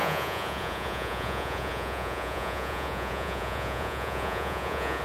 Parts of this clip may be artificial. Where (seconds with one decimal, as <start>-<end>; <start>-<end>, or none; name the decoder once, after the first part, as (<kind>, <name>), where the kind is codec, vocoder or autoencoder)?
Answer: 0.0-5.0 (vocoder, Vocos)